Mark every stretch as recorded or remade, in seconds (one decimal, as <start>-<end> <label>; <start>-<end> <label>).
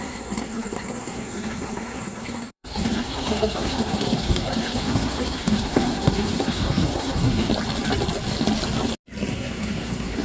0.0-7.5 remade; 7.5-9.3 recorded; 9.3-10.2 remade